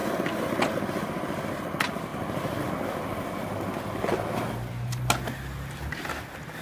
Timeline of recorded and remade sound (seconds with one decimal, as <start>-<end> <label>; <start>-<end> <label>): 0.0-2.1 recorded; 2.1-2.7 remade; 2.7-6.6 recorded